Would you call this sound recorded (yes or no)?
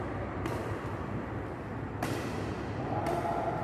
yes